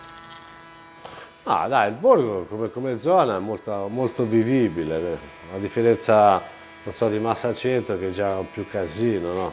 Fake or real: real